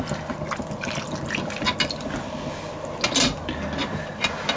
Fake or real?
real